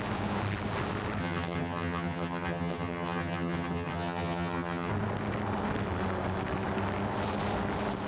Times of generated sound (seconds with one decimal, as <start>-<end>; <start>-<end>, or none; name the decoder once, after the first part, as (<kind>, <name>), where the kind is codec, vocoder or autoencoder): 1.2-4.9 (vocoder, HiFi-GAN)